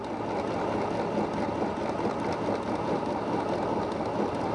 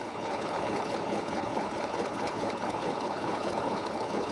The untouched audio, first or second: first